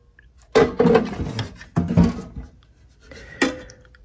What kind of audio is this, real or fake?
real